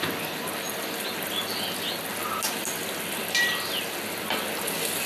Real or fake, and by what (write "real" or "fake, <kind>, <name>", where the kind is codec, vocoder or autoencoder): real